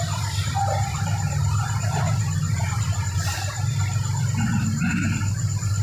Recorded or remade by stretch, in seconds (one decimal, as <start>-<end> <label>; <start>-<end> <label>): 0.0-5.8 recorded